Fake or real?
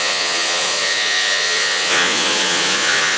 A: fake